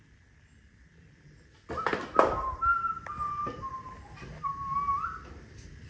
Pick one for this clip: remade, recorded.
recorded